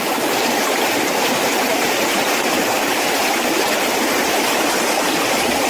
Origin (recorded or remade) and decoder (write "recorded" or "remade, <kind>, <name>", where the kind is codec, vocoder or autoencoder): remade, vocoder, BigVGAN v2